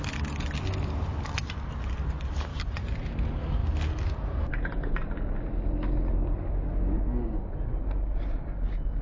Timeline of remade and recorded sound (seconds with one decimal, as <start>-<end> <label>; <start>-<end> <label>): 0.0-9.0 recorded